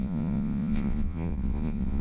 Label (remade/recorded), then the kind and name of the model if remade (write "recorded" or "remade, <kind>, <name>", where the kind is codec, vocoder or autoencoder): remade, vocoder, Vocos